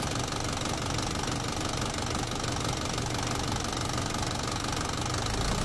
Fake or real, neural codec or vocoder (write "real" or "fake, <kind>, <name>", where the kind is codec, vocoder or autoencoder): real